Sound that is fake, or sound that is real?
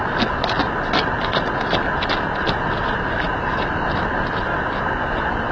real